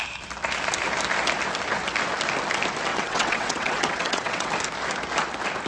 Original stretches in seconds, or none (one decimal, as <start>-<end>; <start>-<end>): 0.0-2.9; 4.5-5.7